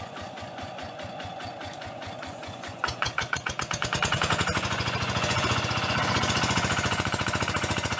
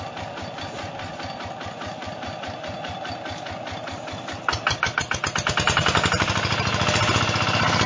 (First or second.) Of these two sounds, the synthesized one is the first